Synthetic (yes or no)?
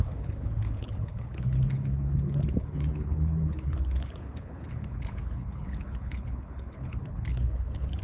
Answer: yes